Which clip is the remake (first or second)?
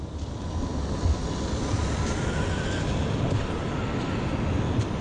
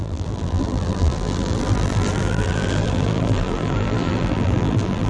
second